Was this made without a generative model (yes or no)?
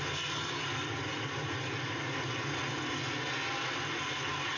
yes